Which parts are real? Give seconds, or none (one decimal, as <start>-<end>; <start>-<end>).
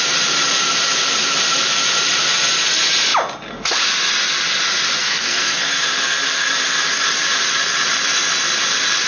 0.0-5.0; 5.7-9.1